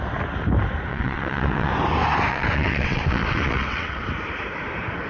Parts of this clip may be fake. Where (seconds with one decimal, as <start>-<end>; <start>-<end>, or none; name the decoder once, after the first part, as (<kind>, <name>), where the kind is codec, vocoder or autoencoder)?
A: 0.9-1.7 (vocoder, WaveNeXt); 2.3-4.0